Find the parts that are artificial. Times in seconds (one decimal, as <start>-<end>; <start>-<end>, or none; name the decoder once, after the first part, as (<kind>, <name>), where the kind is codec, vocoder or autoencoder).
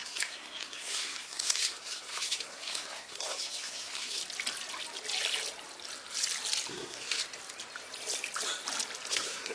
0.0-4.2 (codec, SNAC); 6.7-7.2; 9.1-9.5